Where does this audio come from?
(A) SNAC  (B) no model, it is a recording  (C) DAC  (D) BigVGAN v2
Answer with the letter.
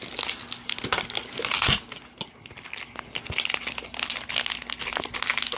B